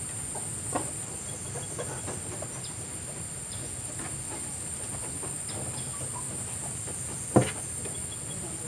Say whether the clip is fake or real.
real